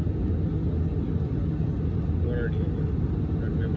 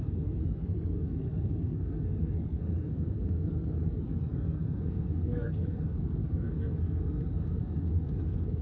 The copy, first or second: second